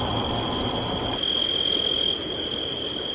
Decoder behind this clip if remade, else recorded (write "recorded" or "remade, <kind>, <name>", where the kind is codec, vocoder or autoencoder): recorded